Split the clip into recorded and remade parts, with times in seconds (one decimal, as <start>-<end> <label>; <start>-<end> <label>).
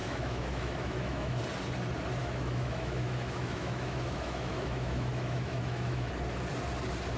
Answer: 0.0-1.4 remade; 1.4-2.2 recorded; 2.2-6.1 remade; 6.1-7.2 recorded